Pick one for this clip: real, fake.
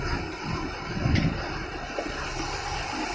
real